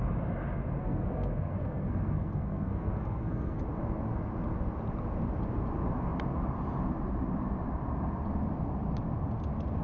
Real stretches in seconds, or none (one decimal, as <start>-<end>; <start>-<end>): 0.0-0.8; 3.6-9.8

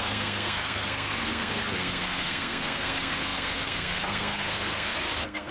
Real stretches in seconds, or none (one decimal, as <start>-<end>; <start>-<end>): none

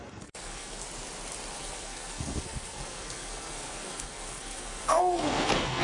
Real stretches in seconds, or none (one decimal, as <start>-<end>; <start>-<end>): 0.8-1.5

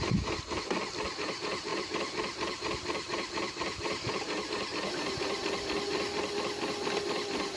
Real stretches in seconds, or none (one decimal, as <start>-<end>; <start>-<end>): 0.0-7.6

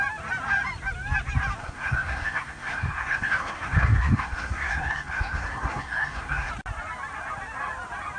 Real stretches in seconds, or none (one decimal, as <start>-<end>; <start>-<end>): 0.0-1.6; 6.5-8.2